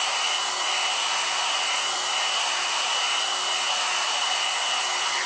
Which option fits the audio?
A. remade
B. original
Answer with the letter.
B